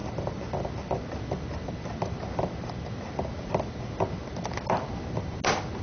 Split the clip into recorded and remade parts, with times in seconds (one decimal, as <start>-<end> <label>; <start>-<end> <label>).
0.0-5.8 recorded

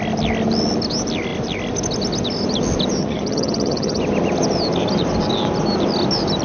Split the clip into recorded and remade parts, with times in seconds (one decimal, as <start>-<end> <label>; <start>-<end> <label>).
0.0-3.0 recorded; 3.0-4.0 remade; 4.0-6.4 recorded

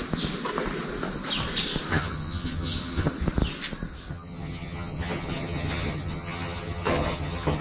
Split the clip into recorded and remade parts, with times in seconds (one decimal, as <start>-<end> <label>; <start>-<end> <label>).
0.0-1.9 recorded; 1.9-3.1 remade; 3.1-4.1 recorded; 4.1-7.6 remade

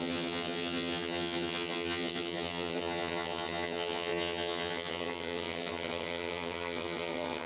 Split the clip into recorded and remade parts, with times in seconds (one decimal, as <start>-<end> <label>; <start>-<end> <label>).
0.0-7.5 remade

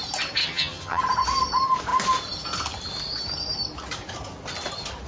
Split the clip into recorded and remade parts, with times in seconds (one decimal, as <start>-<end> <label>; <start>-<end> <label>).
0.0-0.4 recorded; 0.4-1.0 remade; 1.0-5.1 recorded